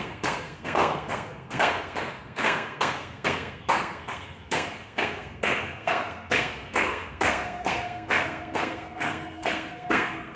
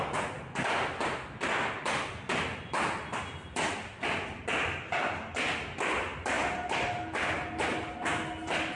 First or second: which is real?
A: second